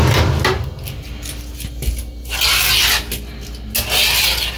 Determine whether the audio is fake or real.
real